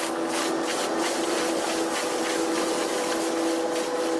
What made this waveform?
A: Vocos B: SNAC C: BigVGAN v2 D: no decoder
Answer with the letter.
D